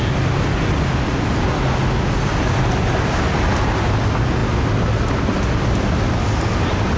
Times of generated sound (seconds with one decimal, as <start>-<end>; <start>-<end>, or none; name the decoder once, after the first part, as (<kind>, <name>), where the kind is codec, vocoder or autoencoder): none